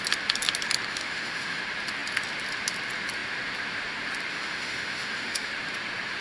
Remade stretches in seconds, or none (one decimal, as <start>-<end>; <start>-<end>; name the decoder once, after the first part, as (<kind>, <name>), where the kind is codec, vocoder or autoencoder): 0.9-1.6 (autoencoder, DAC-VAE); 4.3-5.5